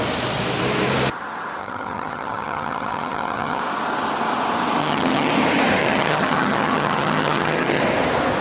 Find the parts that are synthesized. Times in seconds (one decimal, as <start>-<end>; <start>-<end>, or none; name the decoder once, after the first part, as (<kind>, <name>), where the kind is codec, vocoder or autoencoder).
1.6-3.6 (vocoder, HiFi-GAN); 4.8-5.3; 5.8-7.8